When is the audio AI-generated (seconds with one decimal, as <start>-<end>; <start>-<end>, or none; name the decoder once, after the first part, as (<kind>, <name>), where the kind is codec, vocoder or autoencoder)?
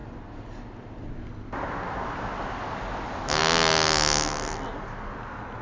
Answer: none